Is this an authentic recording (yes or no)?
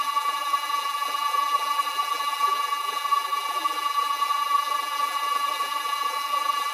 no